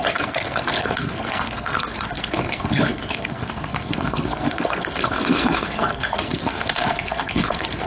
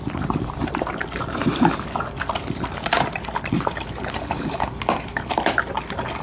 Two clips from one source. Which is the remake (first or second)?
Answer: first